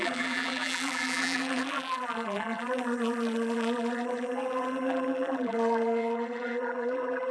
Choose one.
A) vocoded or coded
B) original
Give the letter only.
A